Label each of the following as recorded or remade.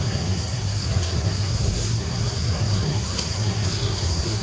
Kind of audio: remade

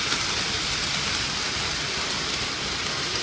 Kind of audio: recorded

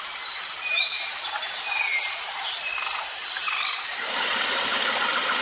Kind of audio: recorded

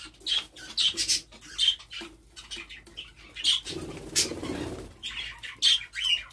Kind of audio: recorded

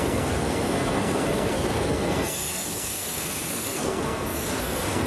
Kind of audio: remade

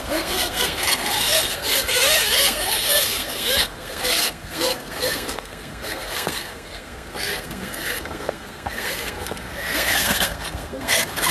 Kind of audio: remade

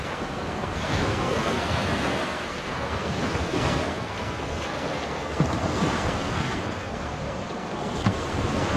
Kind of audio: remade